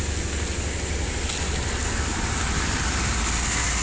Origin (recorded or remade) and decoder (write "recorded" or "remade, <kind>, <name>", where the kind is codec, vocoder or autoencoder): recorded